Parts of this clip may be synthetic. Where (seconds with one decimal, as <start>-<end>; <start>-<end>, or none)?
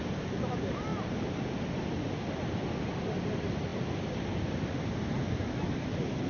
0.9-3.2; 3.7-6.3